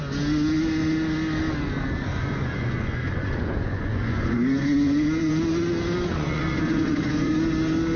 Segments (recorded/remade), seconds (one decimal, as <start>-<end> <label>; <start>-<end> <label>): 0.0-2.1 recorded; 2.1-5.3 remade; 5.3-6.1 recorded; 6.1-7.3 remade; 7.3-8.0 recorded